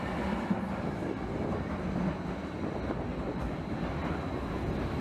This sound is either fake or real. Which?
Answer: real